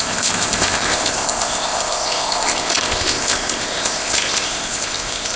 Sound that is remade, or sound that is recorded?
remade